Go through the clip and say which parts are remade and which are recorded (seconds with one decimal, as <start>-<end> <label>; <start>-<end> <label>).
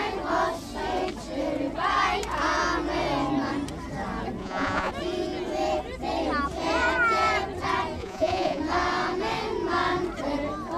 0.0-4.4 recorded; 4.4-4.9 remade; 4.9-8.0 recorded; 8.0-8.6 remade; 8.6-10.8 recorded